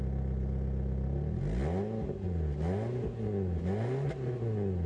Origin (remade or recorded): recorded